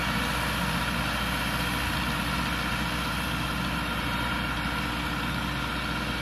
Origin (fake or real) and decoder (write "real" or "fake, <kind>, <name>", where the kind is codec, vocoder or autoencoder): real